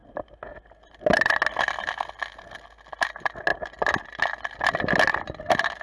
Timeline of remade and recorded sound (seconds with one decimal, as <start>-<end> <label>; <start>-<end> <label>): 0.0-5.8 recorded